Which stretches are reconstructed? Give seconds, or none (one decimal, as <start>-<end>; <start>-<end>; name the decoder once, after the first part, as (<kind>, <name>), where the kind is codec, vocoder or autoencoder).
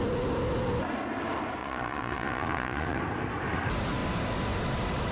1.6-3.0 (vocoder, Vocos)